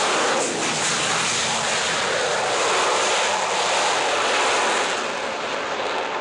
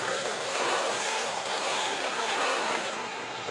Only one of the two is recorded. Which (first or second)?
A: first